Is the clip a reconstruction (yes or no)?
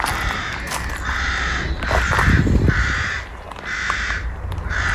no